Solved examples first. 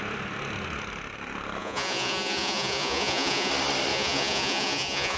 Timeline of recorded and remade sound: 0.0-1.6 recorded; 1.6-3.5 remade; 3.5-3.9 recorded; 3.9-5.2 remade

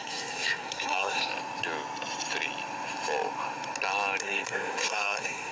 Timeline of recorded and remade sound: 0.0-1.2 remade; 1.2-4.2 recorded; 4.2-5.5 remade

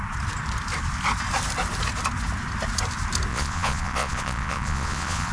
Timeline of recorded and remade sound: 0.0-3.3 recorded; 3.3-5.3 remade

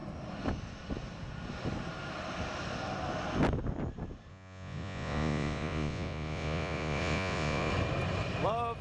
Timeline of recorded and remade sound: 0.0-4.3 recorded; 4.3-7.7 remade; 7.7-8.8 recorded